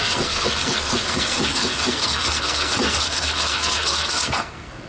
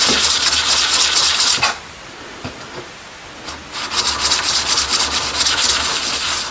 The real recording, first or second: second